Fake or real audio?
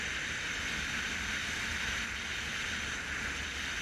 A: real